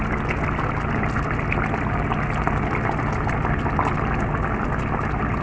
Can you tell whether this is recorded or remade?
recorded